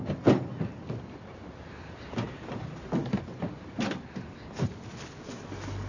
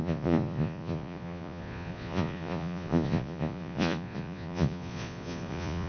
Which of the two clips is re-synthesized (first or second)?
second